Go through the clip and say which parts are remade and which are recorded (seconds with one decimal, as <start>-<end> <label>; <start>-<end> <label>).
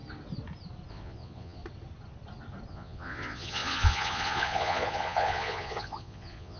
0.0-0.9 recorded; 0.9-1.6 remade; 1.6-2.7 recorded; 2.7-6.6 remade